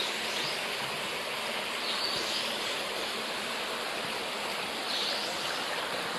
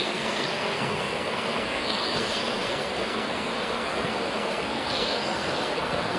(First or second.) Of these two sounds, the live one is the first